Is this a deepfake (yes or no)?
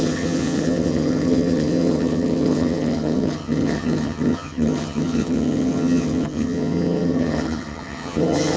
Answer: yes